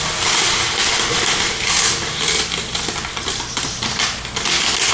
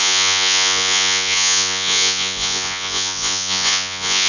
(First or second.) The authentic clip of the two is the first